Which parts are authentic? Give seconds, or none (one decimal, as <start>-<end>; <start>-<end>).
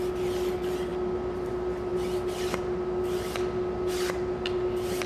0.0-5.1